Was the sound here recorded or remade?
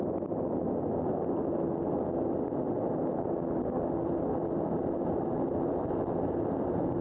recorded